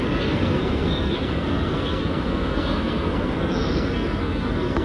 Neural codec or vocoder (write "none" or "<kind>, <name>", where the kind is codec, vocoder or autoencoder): codec, SNAC